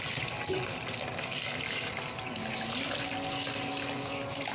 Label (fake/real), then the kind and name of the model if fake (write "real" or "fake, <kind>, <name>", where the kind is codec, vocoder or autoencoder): real